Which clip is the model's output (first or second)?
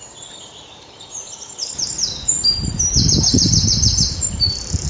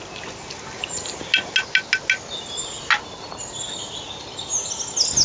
first